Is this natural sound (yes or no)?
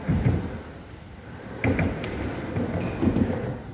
yes